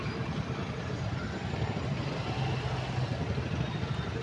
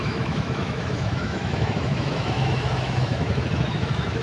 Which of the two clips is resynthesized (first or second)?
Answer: second